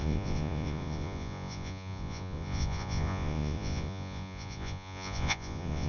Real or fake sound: fake